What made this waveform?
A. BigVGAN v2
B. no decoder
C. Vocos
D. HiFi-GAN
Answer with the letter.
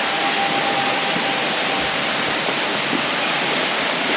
B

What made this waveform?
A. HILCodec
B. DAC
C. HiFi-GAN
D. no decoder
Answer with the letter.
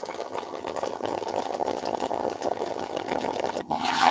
C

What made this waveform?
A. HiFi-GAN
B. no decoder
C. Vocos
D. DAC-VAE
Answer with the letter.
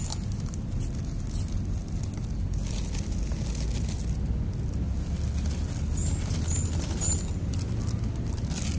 B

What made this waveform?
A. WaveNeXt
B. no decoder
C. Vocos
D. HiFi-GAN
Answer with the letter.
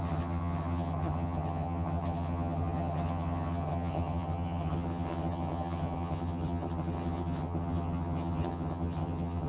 D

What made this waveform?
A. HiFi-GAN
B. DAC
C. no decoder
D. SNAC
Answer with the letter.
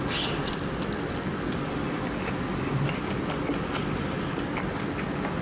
C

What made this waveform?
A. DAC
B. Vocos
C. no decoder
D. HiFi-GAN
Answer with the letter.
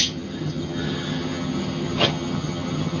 D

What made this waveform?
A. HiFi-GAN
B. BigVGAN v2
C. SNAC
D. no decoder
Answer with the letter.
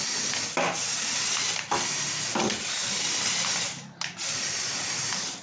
D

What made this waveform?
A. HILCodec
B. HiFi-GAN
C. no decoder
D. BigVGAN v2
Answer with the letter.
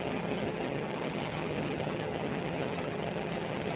B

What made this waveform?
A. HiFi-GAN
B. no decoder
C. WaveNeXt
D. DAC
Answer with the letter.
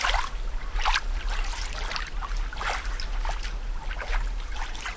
B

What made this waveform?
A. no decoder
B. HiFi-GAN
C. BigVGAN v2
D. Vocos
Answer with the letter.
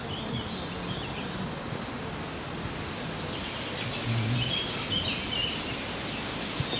A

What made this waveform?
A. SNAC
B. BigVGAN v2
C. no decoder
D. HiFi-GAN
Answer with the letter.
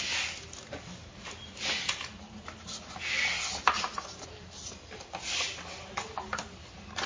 C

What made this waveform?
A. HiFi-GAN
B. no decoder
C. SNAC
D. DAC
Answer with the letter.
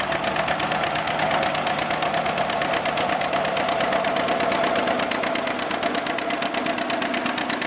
B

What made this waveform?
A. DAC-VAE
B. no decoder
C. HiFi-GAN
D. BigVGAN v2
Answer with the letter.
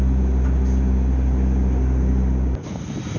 B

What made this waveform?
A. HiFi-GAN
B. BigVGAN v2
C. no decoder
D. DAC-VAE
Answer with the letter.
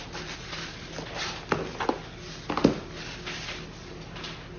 C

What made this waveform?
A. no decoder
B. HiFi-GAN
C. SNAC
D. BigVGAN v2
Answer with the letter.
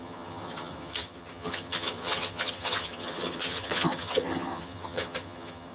B